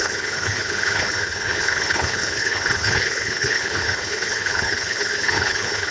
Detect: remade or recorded remade